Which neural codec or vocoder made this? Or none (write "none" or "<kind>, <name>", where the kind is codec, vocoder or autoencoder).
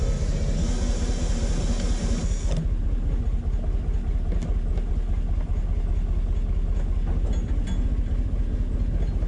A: none